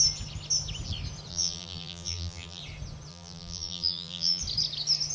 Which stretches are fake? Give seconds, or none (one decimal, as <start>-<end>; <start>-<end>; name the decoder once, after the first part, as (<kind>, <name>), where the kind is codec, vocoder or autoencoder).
1.3-2.6 (vocoder, BigVGAN v2); 3.1-4.4